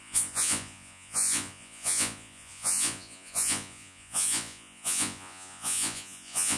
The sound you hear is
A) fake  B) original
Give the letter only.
A